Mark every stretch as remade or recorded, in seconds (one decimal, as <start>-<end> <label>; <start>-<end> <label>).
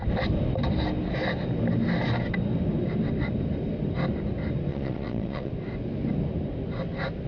0.0-4.7 recorded; 4.7-5.5 remade; 5.5-7.3 recorded